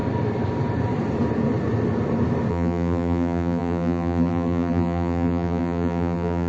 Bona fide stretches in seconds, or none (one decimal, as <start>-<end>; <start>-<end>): 0.0-2.5